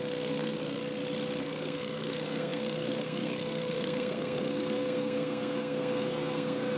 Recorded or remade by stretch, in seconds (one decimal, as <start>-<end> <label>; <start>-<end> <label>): 0.0-0.8 remade; 0.8-1.4 recorded; 1.4-6.8 remade